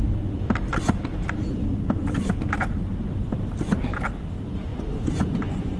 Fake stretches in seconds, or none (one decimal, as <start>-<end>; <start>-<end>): 4.7-5.8